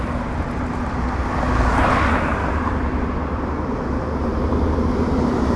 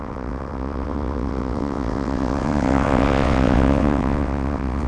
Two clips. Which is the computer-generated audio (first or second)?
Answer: second